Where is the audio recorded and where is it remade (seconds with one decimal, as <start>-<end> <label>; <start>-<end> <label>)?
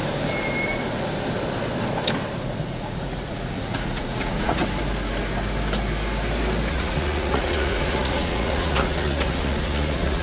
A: 0.0-2.4 recorded; 2.4-4.6 remade; 4.6-6.7 recorded; 6.7-10.2 remade